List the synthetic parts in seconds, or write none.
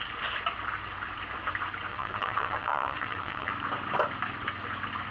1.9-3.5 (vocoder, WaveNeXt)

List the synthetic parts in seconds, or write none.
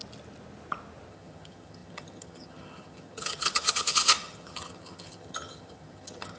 1.1-6.4 (vocoder, HiFi-GAN)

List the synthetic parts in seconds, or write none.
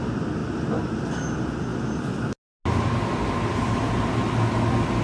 none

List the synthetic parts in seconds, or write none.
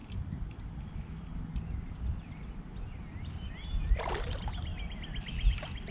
none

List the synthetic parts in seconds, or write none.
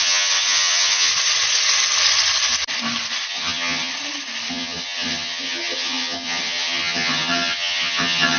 0.0-1.1 (vocoder, HiFi-GAN); 3.3-3.9; 4.5-8.4